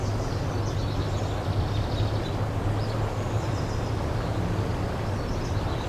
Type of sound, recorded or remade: recorded